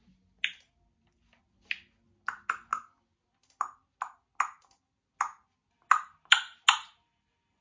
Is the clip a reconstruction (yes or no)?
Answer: no